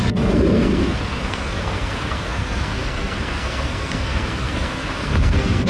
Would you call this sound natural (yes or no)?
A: no